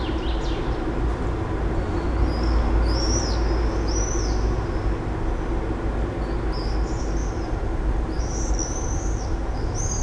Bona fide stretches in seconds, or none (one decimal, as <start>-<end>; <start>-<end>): 0.0-7.2; 8.5-10.0